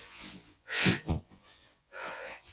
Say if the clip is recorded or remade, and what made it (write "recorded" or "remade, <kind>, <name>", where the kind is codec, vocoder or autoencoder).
remade, vocoder, Vocos